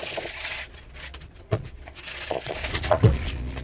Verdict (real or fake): fake